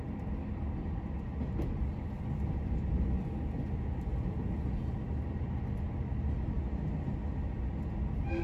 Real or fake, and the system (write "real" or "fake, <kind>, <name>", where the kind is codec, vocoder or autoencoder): real